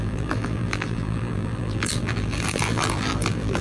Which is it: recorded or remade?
remade